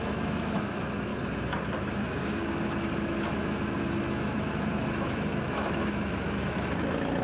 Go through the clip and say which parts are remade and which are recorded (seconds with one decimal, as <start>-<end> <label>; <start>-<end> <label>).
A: 0.0-1.1 remade; 1.1-1.8 recorded; 1.8-7.2 remade